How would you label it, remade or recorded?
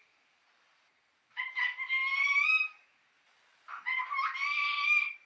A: recorded